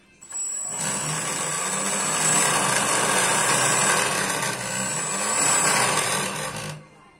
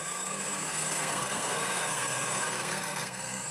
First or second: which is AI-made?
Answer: second